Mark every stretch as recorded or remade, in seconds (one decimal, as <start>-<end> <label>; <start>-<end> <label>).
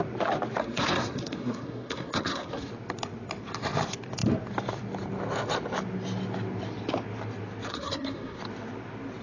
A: 0.0-0.6 recorded; 0.6-2.7 remade; 2.7-7.7 recorded; 7.7-8.4 remade; 8.4-9.2 recorded